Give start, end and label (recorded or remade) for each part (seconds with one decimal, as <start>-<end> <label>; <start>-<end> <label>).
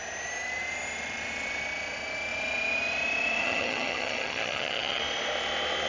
0.0-3.4 recorded; 3.4-5.0 remade; 5.0-5.9 recorded